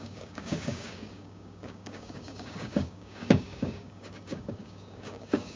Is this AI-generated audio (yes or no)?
yes